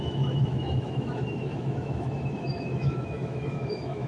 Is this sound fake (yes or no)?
yes